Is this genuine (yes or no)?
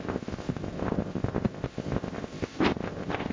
no